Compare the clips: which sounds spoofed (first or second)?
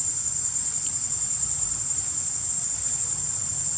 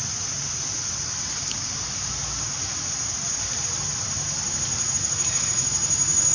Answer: first